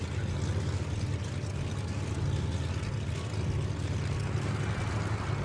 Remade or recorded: recorded